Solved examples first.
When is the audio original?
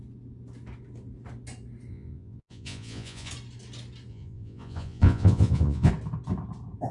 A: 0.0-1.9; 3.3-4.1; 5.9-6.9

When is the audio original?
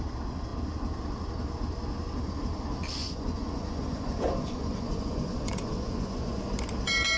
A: 0.0-3.0; 6.4-7.2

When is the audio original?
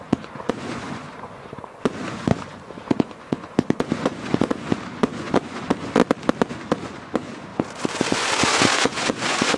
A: 6.0-6.5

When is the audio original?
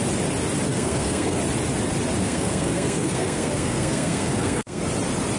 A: 0.0-0.7; 1.4-2.2; 4.8-5.4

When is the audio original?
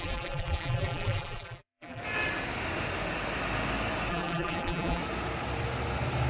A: 2.0-4.1; 5.0-6.3